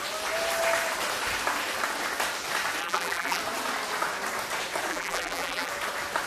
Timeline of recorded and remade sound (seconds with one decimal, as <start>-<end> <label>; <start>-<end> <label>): 0.0-2.8 recorded; 2.8-3.4 remade; 3.4-4.9 recorded; 4.9-5.7 remade; 5.7-6.3 recorded